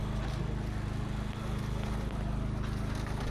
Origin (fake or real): real